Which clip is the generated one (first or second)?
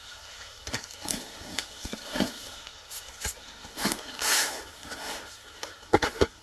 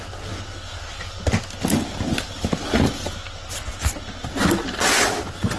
first